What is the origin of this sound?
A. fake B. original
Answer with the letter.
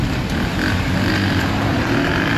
B